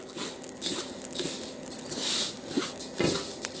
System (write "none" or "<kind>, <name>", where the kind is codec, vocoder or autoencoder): none